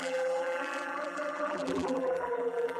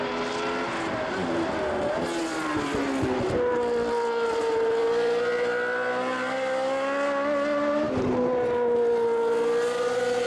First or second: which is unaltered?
second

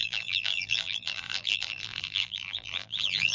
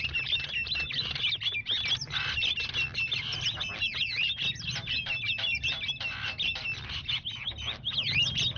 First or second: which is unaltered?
second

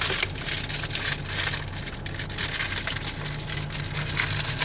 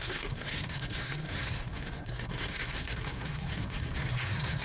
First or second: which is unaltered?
first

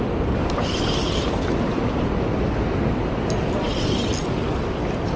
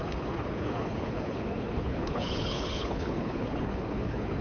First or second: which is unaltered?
first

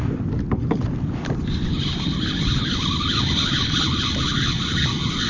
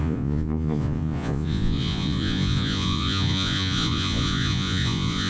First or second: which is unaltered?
first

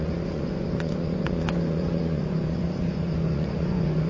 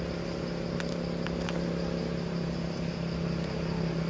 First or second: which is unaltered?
second